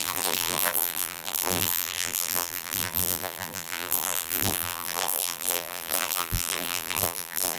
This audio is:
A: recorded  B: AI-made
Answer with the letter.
B